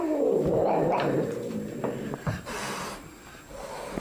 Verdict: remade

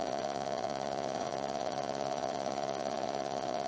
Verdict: remade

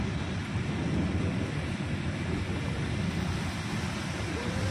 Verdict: recorded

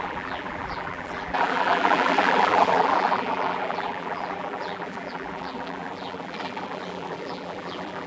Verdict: remade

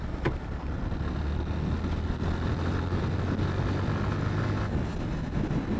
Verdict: recorded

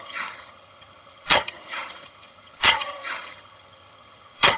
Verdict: remade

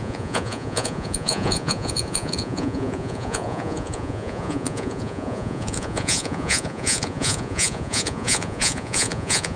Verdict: remade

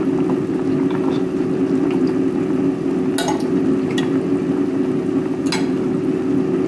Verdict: recorded